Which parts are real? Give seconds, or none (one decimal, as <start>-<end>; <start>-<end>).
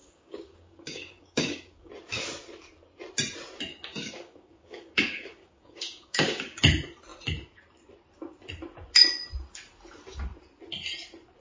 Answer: 1.9-3.7; 6.6-11.4